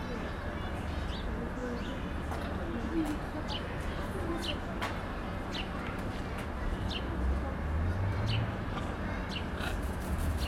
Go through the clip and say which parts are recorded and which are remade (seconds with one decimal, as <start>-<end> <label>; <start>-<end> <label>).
0.0-10.5 recorded